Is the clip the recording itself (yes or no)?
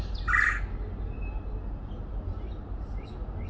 yes